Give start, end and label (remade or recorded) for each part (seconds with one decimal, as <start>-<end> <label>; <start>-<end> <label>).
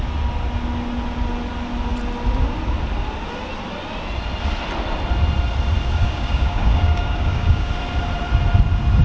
0.0-6.0 recorded; 6.0-7.7 remade; 7.7-9.0 recorded